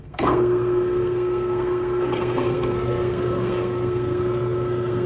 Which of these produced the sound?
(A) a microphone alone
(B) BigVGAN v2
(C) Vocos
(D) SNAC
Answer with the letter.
D